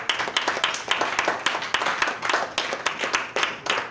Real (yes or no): yes